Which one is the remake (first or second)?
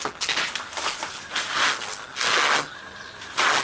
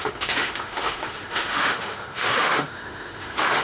second